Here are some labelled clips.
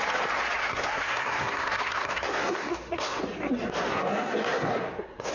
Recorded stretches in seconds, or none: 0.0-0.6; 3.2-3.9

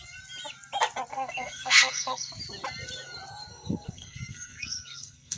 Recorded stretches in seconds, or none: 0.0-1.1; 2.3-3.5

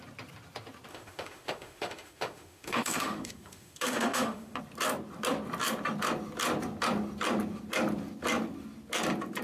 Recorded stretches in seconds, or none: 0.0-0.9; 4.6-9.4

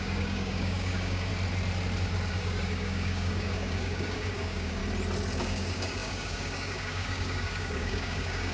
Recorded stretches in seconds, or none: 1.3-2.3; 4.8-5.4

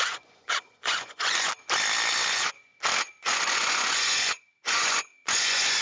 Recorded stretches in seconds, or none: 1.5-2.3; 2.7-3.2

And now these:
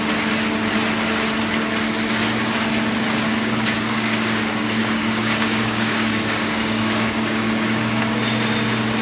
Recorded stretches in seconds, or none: 0.0-3.3; 8.0-9.0